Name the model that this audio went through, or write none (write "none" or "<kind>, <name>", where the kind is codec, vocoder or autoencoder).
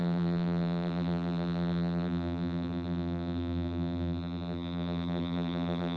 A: vocoder, BigVGAN v2